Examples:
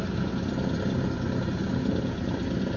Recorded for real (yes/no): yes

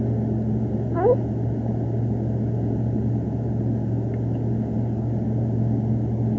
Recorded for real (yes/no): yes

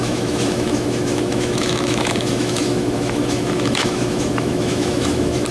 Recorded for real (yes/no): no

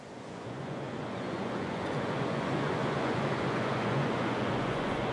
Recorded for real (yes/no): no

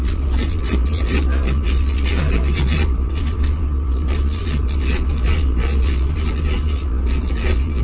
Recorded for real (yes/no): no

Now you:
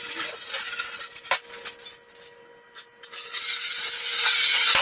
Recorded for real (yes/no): yes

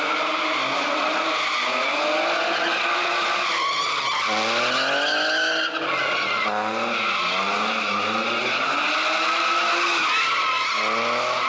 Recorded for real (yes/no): yes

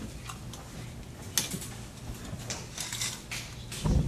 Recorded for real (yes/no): yes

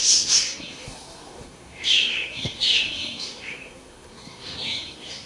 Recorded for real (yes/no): no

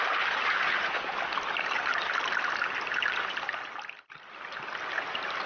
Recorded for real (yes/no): yes